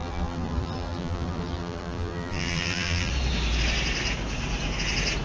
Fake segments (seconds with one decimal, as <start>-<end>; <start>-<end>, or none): 0.0-3.1